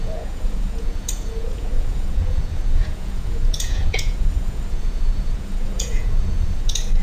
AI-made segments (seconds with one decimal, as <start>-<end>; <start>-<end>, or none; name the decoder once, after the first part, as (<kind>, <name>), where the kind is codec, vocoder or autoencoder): 0.0-7.0 (vocoder, Vocos)

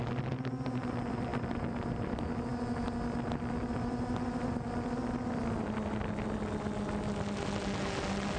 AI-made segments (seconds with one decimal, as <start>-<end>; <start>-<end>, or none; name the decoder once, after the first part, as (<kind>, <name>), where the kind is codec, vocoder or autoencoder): none

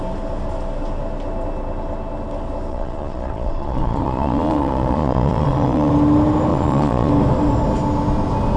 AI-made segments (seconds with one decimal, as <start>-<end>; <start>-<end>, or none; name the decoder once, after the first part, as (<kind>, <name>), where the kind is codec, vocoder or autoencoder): 2.7-5.9 (vocoder, Vocos); 6.5-7.1